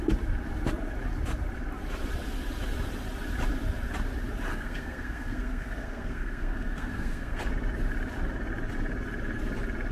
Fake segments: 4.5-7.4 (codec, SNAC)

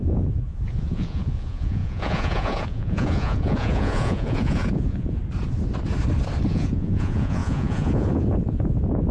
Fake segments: 0.0-5.2 (vocoder, Vocos); 6.5-9.1

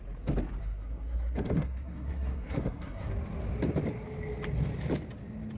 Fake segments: 0.6-3.1 (codec, SNAC)

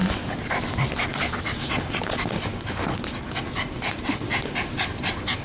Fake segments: none